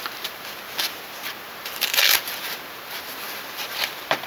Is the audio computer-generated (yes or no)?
yes